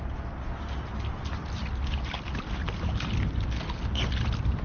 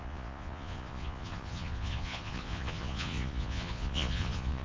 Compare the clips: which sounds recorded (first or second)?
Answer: first